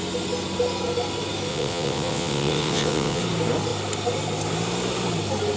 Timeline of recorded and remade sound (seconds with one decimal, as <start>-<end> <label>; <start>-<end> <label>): 0.0-1.5 recorded; 1.5-3.2 remade; 3.2-5.6 recorded